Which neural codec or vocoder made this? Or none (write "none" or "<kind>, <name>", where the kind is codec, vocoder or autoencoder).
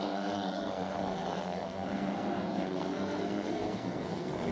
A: codec, SNAC